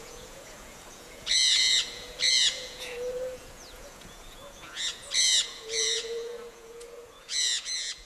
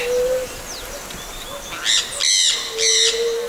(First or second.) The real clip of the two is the second